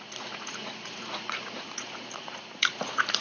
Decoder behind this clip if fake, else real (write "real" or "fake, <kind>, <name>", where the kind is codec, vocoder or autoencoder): fake, vocoder, Vocos